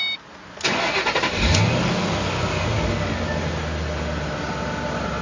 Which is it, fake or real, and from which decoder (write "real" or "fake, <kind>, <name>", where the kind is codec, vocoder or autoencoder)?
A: real